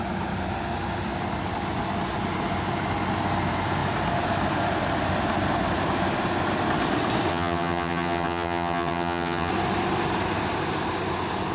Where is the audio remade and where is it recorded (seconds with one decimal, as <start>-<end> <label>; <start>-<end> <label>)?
0.0-7.3 recorded; 7.3-9.5 remade; 9.5-11.5 recorded